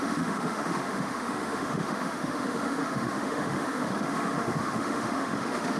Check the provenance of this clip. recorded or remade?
remade